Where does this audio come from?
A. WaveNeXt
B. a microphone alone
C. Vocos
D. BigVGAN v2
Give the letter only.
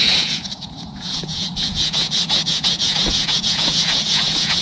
C